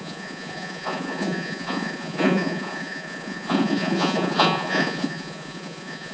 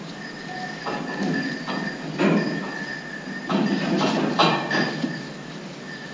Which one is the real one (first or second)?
second